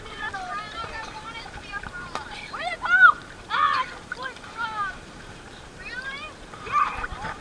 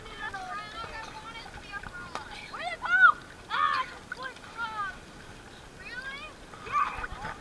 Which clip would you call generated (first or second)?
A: first